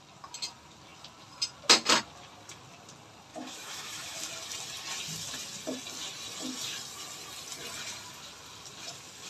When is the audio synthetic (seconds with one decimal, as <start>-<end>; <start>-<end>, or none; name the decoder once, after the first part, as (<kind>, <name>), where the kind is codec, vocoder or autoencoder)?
3.3-4.3 (autoencoder, DAC-VAE)